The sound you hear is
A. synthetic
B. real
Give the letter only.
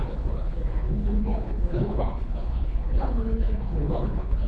A